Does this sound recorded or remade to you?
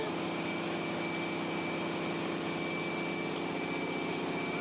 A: recorded